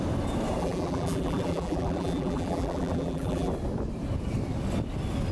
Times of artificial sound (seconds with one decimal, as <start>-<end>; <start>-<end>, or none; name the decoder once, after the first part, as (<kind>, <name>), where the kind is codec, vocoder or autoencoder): 0.6-3.5 (vocoder, BigVGAN v2)